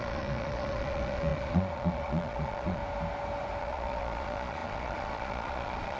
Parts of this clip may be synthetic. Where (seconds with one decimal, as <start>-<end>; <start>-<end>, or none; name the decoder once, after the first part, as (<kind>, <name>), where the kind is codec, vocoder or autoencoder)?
0.0-2.8 (vocoder, Vocos); 3.6-6.0